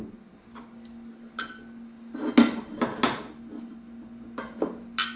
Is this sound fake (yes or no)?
no